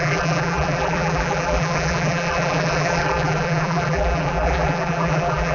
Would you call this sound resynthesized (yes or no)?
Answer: yes